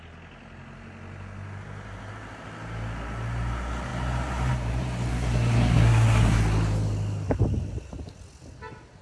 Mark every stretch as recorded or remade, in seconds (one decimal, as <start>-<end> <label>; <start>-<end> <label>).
0.0-5.1 recorded; 5.1-6.4 remade; 6.4-9.0 recorded